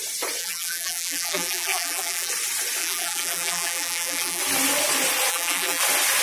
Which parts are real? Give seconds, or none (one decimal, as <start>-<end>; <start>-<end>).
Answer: 0.0-0.4; 2.3-2.8; 4.4-5.3; 5.8-6.2